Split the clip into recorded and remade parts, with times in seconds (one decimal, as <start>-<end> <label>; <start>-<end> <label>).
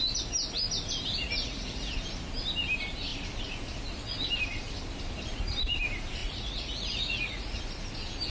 0.0-1.2 recorded; 1.2-1.9 remade; 1.9-6.2 recorded; 6.2-7.6 remade; 7.6-8.3 recorded